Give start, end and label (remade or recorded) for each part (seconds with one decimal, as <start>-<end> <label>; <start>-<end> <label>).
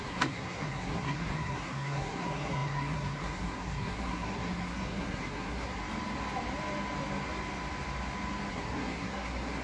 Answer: 0.0-5.8 remade; 5.8-8.5 recorded; 8.5-9.6 remade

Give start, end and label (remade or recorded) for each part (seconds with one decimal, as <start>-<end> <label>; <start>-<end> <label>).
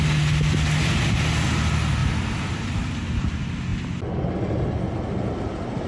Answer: 0.0-2.0 recorded; 2.0-2.9 remade; 2.9-5.9 recorded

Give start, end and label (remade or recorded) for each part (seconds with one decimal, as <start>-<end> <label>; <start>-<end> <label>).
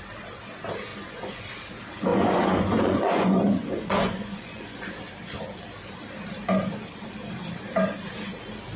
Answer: 0.0-0.9 recorded; 0.9-1.4 remade; 1.4-2.1 recorded; 2.1-4.9 remade; 4.9-8.8 recorded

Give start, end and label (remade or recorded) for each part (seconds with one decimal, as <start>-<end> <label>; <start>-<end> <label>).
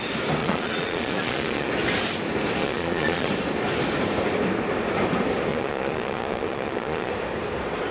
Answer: 0.0-0.4 recorded; 0.4-1.7 remade; 1.7-2.6 recorded; 2.6-3.3 remade; 3.3-5.5 recorded; 5.5-7.1 remade; 7.1-7.9 recorded